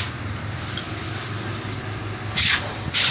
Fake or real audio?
real